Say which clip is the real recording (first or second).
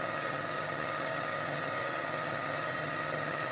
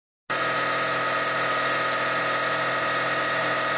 second